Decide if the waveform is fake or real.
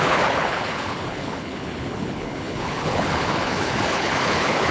fake